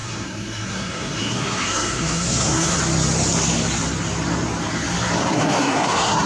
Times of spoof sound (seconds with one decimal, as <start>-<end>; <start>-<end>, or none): 0.0-2.8; 5.2-6.3